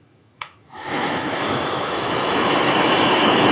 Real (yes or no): no